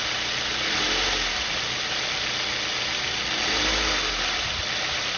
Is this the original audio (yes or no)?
yes